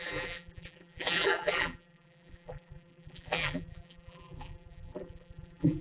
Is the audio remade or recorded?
remade